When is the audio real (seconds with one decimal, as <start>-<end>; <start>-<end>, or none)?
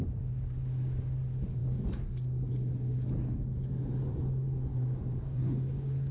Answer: 0.0-4.7